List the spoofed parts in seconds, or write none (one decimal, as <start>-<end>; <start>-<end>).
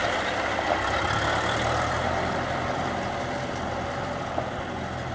none